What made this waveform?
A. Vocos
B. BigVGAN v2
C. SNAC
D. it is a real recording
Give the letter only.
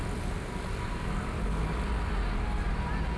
D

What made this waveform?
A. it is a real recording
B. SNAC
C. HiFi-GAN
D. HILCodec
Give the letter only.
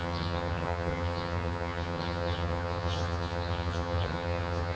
C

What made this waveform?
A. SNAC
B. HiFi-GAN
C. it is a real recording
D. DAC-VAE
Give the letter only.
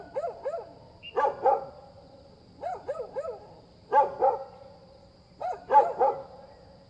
C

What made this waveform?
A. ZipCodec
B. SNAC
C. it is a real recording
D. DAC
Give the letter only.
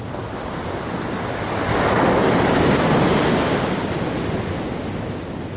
C